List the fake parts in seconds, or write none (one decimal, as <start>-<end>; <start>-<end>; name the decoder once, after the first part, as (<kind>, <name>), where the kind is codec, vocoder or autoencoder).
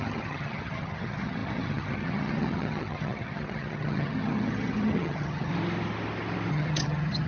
0.0-5.5 (vocoder, HiFi-GAN); 6.5-7.3